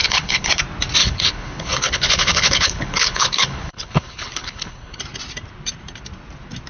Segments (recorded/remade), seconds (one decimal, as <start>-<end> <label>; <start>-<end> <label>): 0.0-0.6 remade; 0.6-1.0 recorded; 1.0-5.0 remade; 5.0-6.7 recorded